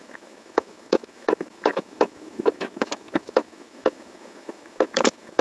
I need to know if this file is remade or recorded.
remade